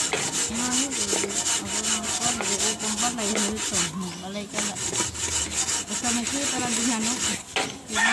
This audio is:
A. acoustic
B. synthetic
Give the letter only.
A